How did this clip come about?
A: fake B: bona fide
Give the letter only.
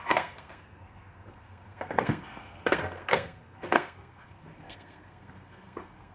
A